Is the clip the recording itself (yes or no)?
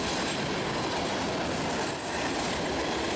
yes